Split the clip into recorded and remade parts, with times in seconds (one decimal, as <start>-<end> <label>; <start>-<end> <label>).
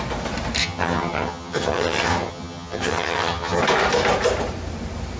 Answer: 0.0-0.6 recorded; 0.6-3.6 remade; 3.6-5.2 recorded